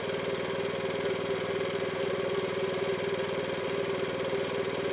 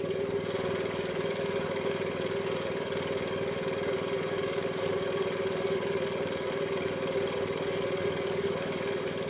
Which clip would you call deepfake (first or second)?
second